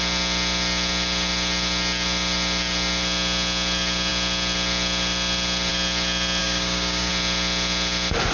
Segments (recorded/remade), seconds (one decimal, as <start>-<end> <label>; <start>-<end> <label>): 0.0-6.4 recorded; 6.4-7.1 remade; 7.1-8.3 recorded